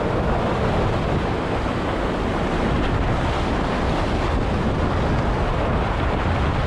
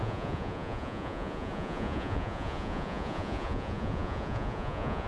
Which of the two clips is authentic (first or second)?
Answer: first